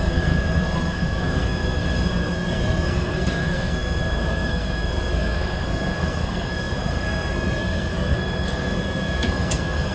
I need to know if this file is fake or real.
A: fake